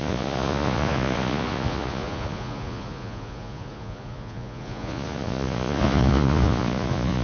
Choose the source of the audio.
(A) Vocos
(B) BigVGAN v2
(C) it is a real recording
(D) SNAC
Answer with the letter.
A